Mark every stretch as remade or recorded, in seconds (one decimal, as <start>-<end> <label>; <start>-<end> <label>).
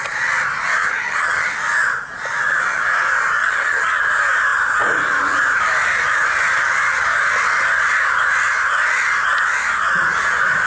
0.0-0.8 recorded; 0.8-1.5 remade; 1.5-3.4 recorded; 3.4-4.0 remade; 4.0-10.7 recorded